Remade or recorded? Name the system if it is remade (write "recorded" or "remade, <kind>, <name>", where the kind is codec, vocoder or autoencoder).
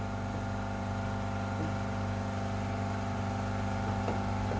recorded